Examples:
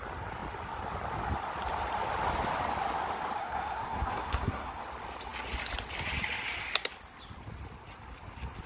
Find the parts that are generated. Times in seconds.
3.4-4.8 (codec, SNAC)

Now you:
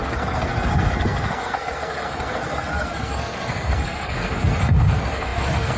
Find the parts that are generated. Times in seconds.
0.0-5.8 (codec, SNAC)

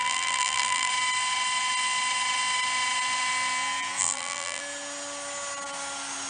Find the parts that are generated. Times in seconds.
0.0-0.9 (vocoder, BigVGAN v2); 4.0-4.6

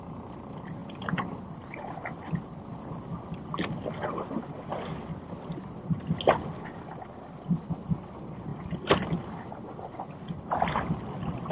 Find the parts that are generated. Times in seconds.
none